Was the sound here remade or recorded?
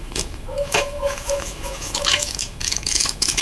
remade